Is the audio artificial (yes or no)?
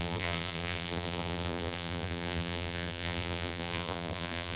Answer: yes